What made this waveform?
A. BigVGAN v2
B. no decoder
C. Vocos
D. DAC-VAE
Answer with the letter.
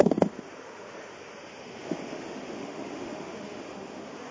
D